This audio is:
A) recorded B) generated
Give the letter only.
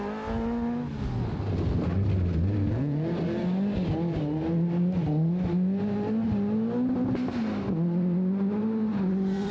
A